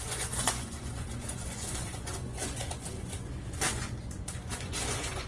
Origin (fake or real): fake